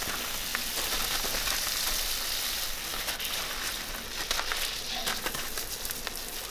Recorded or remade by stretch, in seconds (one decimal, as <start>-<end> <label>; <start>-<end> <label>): 0.0-6.5 recorded